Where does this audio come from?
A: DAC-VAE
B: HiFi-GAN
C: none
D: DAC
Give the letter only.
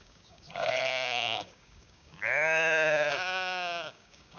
D